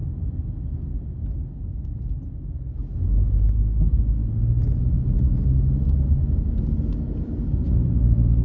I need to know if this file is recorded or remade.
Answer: recorded